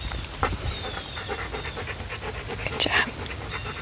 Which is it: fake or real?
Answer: real